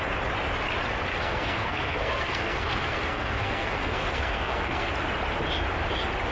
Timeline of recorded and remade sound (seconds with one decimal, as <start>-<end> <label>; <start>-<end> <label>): 0.0-1.1 recorded; 1.1-4.9 remade; 4.9-6.3 recorded